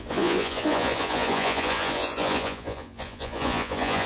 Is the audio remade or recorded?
remade